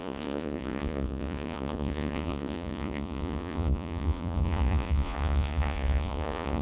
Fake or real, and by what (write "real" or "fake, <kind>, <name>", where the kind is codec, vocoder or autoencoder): fake, vocoder, Vocos